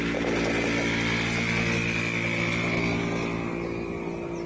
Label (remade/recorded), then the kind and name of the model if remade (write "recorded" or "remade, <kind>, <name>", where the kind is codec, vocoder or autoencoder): recorded